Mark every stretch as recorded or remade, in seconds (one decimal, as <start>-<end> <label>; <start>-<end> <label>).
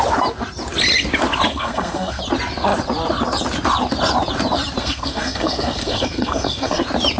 0.0-1.5 recorded; 1.5-2.2 remade; 2.2-4.8 recorded; 4.8-6.8 remade; 6.8-7.2 recorded